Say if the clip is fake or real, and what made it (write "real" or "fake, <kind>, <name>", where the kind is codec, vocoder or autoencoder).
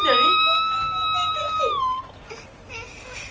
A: real